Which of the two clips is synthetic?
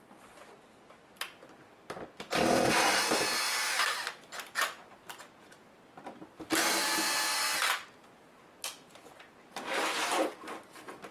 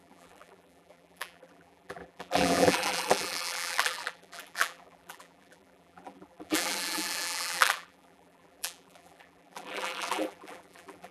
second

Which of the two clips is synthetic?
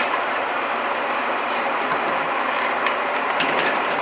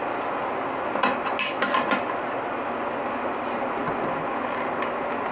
first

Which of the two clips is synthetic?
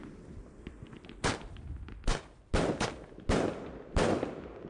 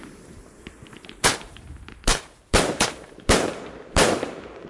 second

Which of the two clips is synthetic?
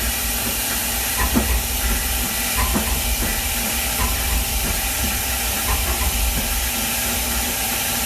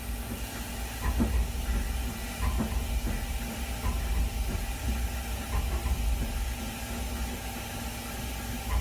first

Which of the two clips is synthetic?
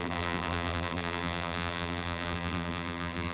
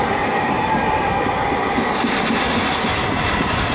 first